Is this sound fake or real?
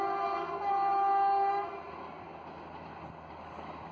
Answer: real